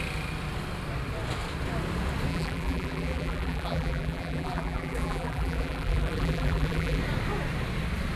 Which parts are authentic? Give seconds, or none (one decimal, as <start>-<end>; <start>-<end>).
0.0-2.3; 7.0-8.2